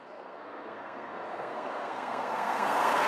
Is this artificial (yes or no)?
yes